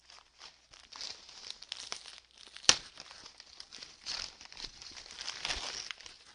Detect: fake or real real